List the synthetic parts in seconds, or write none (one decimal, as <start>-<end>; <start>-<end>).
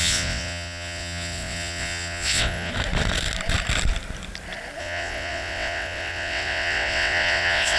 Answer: 0.0-2.7; 4.8-7.8